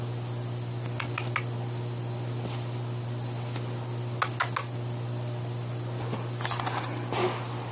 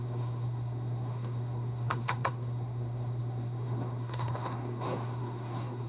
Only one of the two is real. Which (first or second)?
first